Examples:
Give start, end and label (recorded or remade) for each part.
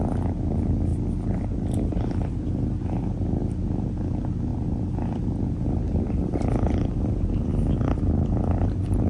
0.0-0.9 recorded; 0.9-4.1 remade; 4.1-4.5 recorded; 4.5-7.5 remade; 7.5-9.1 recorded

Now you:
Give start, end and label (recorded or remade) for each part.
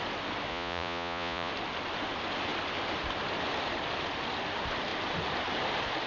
0.0-0.5 recorded; 0.5-1.5 remade; 1.5-6.1 recorded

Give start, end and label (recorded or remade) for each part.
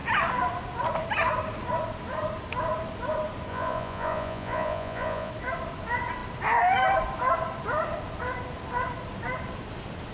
0.0-3.5 recorded; 3.5-5.3 remade; 5.3-10.1 recorded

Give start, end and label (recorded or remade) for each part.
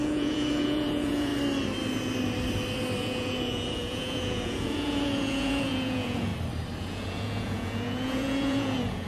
0.0-1.3 remade; 1.3-3.0 recorded; 3.0-6.3 remade; 6.3-6.8 recorded; 6.8-9.1 remade